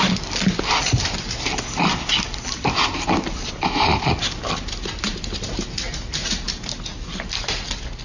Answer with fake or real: real